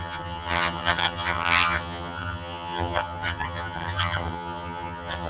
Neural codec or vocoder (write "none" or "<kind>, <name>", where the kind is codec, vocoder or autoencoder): vocoder, HiFi-GAN